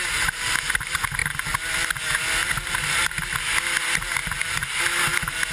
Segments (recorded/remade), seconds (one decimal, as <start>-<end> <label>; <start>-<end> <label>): 0.0-1.2 recorded; 1.2-2.0 remade; 2.0-2.4 recorded; 2.4-3.4 remade; 3.4-4.2 recorded; 4.2-4.8 remade; 4.8-5.5 recorded